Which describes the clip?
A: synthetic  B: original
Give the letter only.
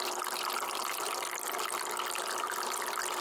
B